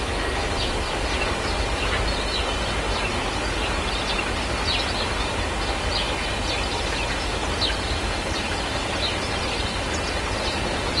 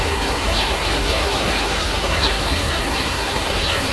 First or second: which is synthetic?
second